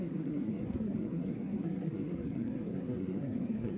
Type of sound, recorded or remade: remade